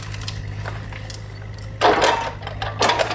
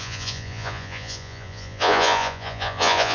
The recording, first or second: first